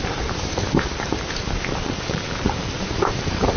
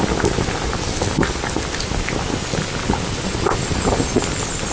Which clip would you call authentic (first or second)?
second